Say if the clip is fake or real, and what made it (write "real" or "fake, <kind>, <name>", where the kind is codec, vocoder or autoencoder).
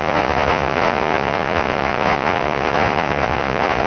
fake, vocoder, Vocos